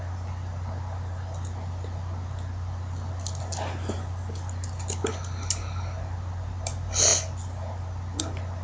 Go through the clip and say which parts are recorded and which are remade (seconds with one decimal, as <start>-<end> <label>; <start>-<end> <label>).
0.0-8.6 recorded